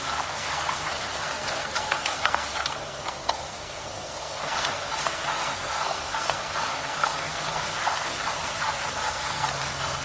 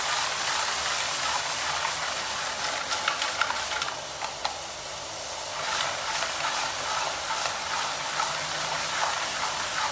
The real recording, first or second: second